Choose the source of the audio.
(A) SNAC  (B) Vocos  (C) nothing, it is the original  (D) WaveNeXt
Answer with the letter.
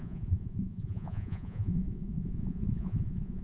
B